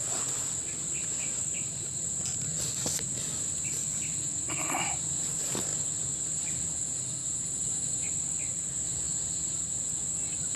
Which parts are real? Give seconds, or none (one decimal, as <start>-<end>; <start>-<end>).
0.0-10.6